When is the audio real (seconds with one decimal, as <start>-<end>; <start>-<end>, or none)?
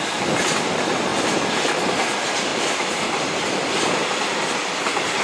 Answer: 0.0-2.5; 3.4-4.0; 4.7-5.2